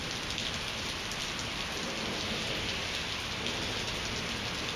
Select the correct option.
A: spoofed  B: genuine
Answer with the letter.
B